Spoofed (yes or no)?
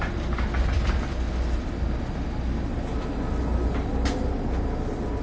no